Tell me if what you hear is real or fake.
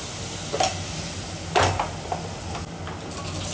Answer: real